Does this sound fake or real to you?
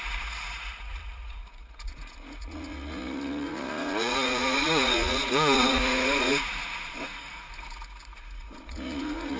fake